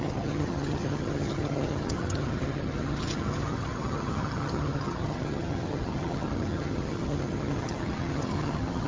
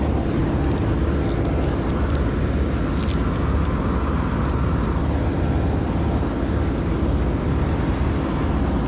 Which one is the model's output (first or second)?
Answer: first